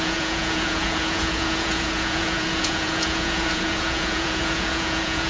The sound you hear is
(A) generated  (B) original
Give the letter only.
A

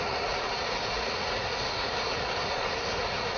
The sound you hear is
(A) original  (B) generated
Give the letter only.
B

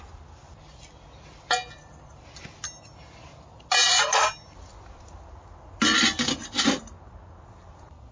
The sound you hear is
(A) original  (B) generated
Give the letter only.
A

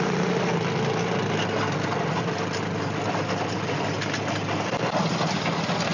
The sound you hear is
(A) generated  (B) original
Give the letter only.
B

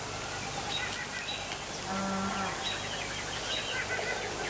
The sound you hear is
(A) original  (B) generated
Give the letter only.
A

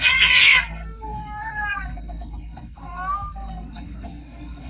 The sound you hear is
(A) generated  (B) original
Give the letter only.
A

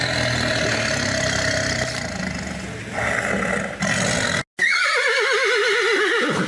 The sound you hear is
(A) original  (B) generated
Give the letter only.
A